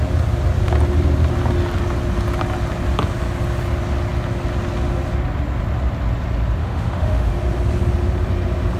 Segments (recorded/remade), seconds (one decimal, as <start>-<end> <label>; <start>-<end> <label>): 0.0-6.6 recorded; 6.6-7.3 remade; 7.3-8.8 recorded